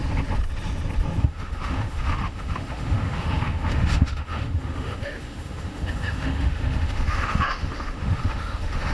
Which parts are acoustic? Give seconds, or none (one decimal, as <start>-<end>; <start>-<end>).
0.0-1.2

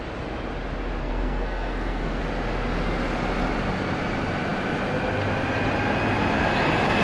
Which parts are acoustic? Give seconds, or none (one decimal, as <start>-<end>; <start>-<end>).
0.0-1.0; 2.2-7.0

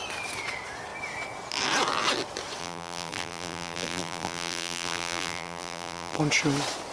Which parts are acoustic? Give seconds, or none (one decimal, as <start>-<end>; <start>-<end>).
0.0-2.6; 6.2-6.9

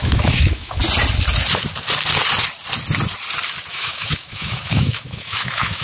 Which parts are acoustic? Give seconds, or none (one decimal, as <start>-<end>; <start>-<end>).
0.8-3.7

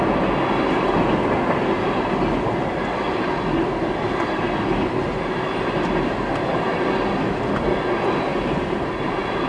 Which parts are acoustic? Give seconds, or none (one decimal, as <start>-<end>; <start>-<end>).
0.0-8.3

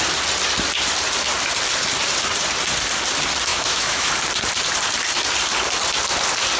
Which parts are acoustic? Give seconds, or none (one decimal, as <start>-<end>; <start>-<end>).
0.0-3.5; 4.1-6.6

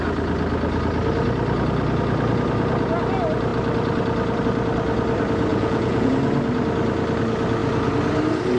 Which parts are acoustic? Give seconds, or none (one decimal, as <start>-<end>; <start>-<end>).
0.0-5.5; 6.1-8.6

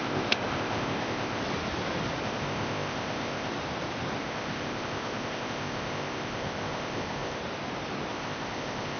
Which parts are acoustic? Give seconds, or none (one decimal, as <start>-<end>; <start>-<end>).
1.4-2.2; 3.5-4.2; 7.4-8.1